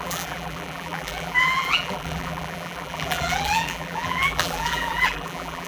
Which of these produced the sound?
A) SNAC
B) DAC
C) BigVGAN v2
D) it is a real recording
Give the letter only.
C